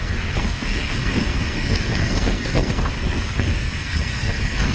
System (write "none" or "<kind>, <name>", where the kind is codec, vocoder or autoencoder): codec, SNAC